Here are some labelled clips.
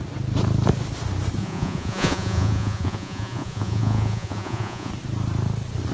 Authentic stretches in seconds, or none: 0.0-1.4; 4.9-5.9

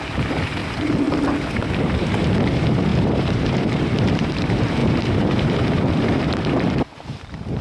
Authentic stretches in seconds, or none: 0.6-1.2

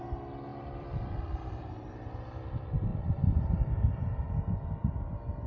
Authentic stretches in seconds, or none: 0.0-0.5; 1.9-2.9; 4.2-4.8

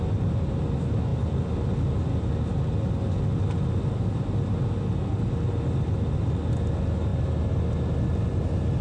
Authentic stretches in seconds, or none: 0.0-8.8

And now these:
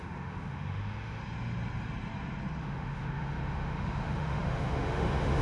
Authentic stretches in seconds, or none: 1.2-2.6